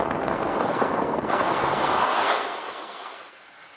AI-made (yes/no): yes